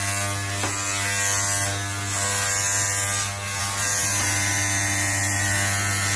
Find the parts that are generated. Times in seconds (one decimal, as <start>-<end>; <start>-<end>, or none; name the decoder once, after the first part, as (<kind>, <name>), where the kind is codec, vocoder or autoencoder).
3.6-6.2 (vocoder, Vocos)